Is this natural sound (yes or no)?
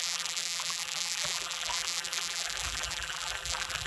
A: no